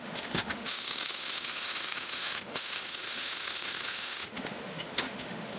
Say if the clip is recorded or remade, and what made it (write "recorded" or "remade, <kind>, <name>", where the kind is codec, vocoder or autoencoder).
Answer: remade, autoencoder, DAC-VAE